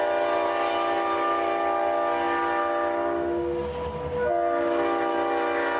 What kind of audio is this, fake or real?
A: real